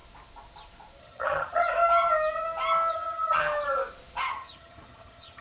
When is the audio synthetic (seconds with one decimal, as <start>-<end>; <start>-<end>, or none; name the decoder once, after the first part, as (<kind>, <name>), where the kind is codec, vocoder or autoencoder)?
1.0-1.7 (vocoder, HiFi-GAN); 2.9-3.4; 4.2-5.4